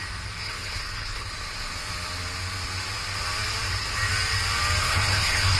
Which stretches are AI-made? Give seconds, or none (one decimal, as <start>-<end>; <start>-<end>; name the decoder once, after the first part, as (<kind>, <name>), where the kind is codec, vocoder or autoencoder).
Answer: 0.4-1.3 (codec, HILCodec); 4.8-5.6